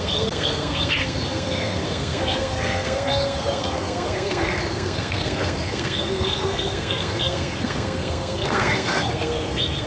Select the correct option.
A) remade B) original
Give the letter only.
A